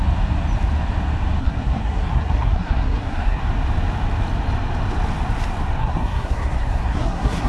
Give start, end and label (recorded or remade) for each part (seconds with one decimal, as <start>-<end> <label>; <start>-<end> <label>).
0.0-1.4 recorded; 1.4-3.4 remade; 3.4-5.8 recorded; 5.8-7.5 remade